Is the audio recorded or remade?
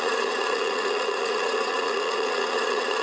remade